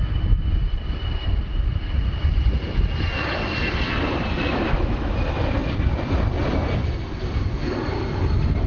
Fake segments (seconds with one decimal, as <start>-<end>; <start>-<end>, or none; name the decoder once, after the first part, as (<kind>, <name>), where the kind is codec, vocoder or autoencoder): 4.4-5.1 (autoencoder, DAC-VAE)